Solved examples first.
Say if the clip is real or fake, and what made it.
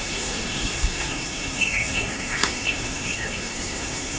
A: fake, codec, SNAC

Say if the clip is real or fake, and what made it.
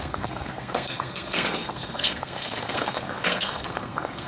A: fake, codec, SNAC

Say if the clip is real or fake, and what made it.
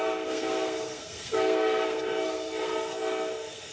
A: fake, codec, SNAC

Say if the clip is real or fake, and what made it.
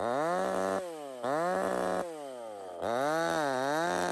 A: real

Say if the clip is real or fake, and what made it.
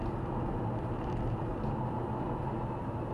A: real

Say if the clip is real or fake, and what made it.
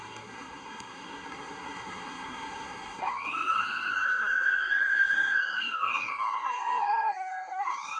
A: fake, codec, SNAC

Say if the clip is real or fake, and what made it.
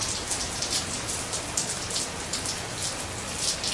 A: real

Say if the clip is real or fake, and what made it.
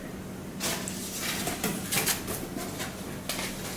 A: real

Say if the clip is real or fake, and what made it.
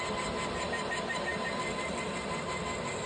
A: real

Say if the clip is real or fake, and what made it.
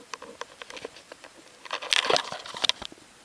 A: real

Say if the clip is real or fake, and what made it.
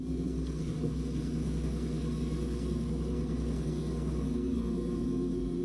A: fake, codec, SNAC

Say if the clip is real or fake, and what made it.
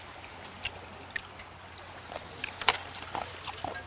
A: real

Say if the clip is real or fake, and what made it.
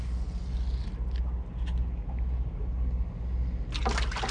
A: real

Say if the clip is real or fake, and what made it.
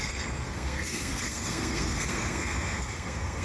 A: fake, codec, SNAC